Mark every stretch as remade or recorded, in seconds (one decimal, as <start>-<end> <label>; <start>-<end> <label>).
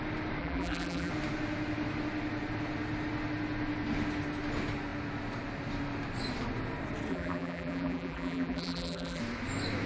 0.0-0.4 recorded; 0.4-1.1 remade; 1.1-7.1 recorded; 7.1-9.2 remade; 9.2-9.9 recorded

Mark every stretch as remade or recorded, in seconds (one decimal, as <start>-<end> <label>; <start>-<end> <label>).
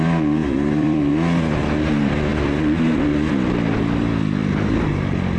0.0-0.4 recorded; 0.4-1.1 remade; 1.1-5.4 recorded